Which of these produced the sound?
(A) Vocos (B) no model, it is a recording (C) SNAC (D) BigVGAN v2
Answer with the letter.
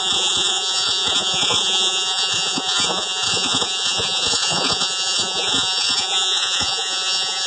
A